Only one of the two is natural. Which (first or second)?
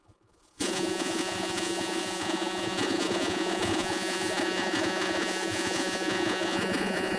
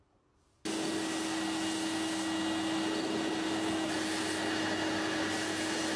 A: second